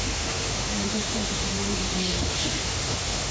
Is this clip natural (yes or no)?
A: no